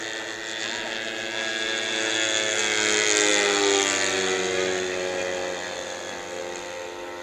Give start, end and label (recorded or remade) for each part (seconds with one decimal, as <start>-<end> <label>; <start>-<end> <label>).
0.0-7.2 recorded